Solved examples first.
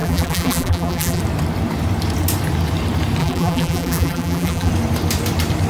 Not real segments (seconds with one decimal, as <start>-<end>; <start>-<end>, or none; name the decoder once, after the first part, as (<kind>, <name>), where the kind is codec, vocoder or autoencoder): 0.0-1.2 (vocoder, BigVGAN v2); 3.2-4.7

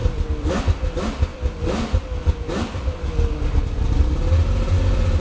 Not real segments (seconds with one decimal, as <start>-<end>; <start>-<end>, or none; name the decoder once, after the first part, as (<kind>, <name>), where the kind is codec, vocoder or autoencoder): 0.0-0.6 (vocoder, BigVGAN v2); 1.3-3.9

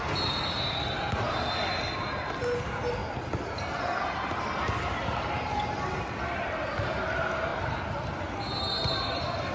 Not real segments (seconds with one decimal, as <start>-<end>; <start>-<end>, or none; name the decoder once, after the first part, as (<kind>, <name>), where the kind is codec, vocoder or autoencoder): 7.5-8.2 (vocoder, BigVGAN v2)

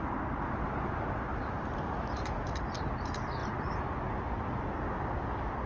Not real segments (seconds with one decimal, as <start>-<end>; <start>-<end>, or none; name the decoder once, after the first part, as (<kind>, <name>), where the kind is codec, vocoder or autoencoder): 1.3-2.4 (vocoder, BigVGAN v2)

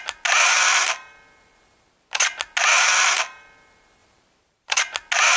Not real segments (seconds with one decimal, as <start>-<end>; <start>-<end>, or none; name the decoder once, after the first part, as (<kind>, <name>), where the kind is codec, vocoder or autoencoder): 4.0-4.8 (vocoder, BigVGAN v2)

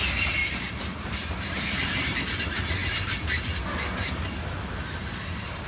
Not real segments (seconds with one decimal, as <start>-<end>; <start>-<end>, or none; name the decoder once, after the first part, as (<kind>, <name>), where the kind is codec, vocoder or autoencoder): 0.4-2.2 (vocoder, BigVGAN v2); 2.8-3.6

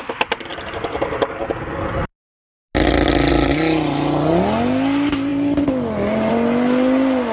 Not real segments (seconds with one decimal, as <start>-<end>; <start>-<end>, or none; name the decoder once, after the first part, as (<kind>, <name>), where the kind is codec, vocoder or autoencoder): 0.5-1.4 (vocoder, BigVGAN v2)

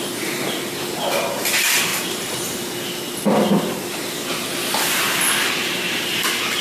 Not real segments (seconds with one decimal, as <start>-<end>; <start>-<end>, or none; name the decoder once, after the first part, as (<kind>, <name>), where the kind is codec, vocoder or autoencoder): 1.9-2.6 (vocoder, BigVGAN v2)